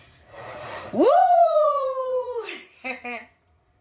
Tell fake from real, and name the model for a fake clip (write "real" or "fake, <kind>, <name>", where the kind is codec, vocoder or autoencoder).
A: fake, vocoder, Vocos